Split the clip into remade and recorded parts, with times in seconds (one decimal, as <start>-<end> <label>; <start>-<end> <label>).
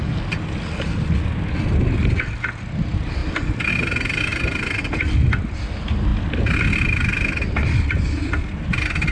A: 0.0-4.3 recorded; 4.3-4.9 remade; 4.9-9.1 recorded